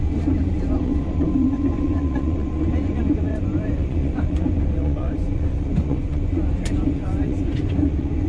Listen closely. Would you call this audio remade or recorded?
remade